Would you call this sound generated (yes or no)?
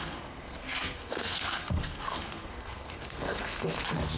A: yes